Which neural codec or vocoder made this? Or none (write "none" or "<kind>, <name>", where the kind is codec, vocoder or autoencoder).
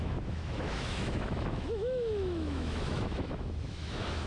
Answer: autoencoder, DAC-VAE